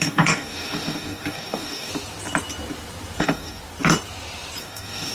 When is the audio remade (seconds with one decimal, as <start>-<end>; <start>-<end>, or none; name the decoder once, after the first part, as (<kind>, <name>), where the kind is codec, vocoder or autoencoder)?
0.0-1.9 (codec, DAC); 3.2-3.6; 4.6-5.1